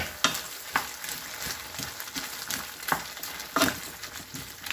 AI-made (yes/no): no